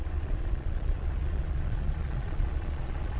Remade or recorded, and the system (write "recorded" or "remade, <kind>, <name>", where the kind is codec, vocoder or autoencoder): remade, vocoder, Vocos